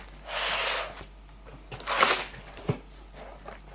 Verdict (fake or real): real